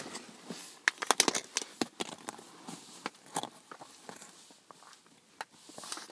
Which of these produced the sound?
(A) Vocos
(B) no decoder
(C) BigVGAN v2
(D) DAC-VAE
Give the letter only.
B